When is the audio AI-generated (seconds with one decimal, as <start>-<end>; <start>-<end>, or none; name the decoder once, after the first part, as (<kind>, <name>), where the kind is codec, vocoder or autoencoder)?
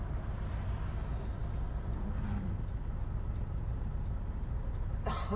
none